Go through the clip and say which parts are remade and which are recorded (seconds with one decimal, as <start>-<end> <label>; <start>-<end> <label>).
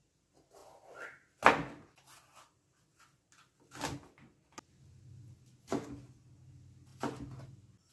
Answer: 0.0-7.9 recorded